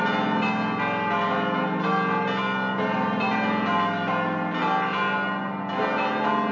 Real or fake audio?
real